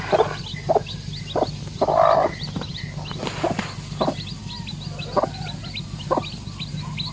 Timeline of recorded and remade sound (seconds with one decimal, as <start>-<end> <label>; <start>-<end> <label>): 0.0-7.1 recorded